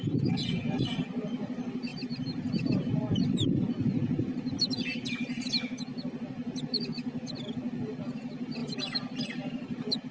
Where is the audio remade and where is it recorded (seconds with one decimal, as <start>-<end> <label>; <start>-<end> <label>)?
0.0-1.9 recorded; 1.9-3.0 remade; 3.0-8.6 recorded; 8.6-10.1 remade